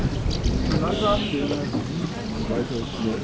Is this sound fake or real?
real